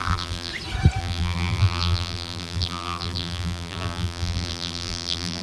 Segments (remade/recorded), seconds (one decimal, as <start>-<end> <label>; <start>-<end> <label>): 0.0-0.5 remade; 0.5-1.0 recorded; 1.0-5.4 remade